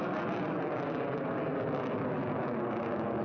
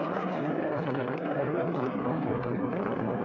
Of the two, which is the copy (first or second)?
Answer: second